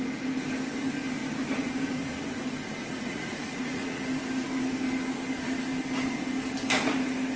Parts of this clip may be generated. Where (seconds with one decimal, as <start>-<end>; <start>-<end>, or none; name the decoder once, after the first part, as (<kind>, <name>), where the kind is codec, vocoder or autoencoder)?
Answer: 2.8-4.0 (vocoder, Vocos)